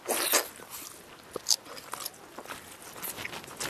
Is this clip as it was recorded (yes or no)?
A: yes